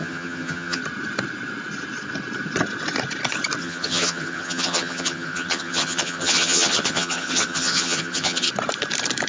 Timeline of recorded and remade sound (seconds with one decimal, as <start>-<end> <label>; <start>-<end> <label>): 0.0-0.8 remade; 0.8-3.6 recorded; 3.6-8.5 remade; 8.5-9.3 recorded